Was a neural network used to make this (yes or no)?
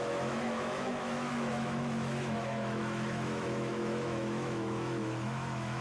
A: yes